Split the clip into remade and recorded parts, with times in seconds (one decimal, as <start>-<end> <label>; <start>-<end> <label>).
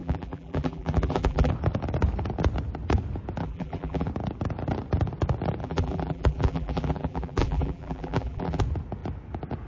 0.0-1.5 remade; 1.5-3.4 recorded; 3.4-4.1 remade; 4.1-5.6 recorded; 5.6-8.6 remade; 8.6-9.7 recorded